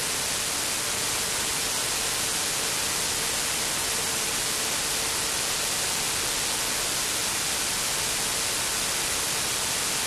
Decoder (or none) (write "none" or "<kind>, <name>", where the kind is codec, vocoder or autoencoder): none